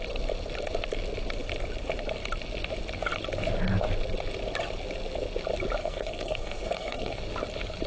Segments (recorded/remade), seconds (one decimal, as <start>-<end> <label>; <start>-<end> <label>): 0.0-5.8 recorded; 5.8-7.2 remade; 7.2-7.9 recorded